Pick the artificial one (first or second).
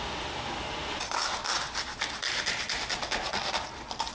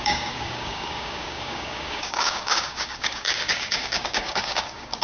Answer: second